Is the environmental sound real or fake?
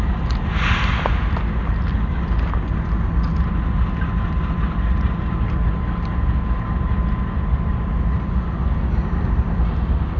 real